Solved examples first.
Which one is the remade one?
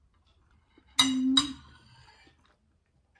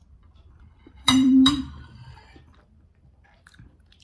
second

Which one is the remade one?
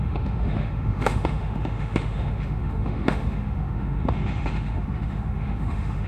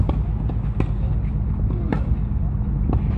first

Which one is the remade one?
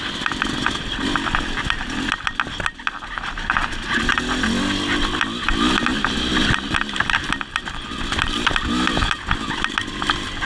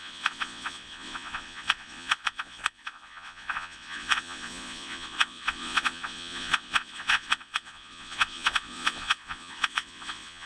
second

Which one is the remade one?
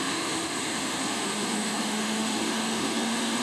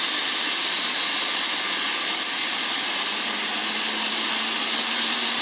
first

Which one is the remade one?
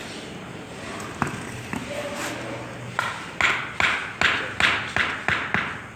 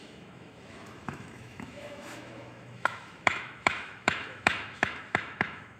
second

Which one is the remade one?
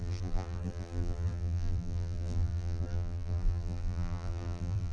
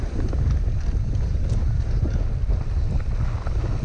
first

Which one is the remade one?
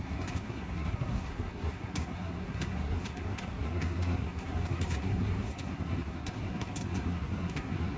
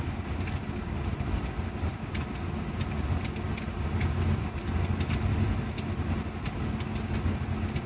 first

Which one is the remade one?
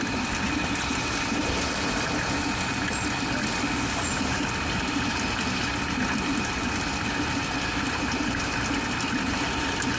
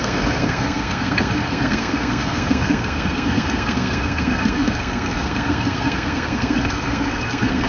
second